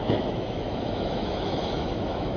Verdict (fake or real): fake